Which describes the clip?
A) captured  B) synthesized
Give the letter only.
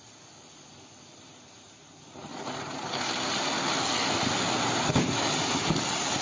A